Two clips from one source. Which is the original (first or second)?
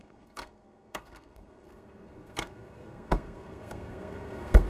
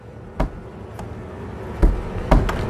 second